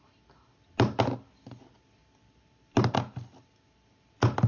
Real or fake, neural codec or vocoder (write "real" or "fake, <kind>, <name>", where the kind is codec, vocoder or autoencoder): real